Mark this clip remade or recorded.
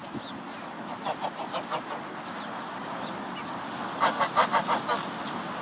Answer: recorded